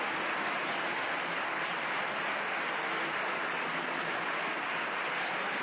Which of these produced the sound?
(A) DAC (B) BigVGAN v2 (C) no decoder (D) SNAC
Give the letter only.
C